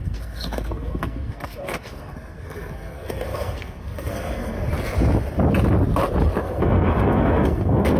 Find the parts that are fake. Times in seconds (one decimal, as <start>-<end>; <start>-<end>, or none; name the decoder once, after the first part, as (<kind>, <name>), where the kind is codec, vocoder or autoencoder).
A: 0.0-4.7 (codec, SNAC); 6.4-8.0